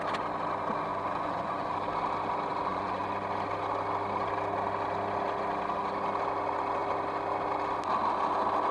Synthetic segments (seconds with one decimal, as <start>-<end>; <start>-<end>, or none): 0.9-1.7; 2.5-3.0